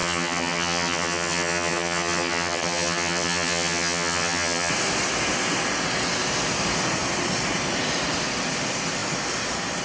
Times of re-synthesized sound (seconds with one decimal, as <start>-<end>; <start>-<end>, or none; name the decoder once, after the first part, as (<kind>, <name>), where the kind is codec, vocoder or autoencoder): 0.0-4.7 (vocoder, HiFi-GAN)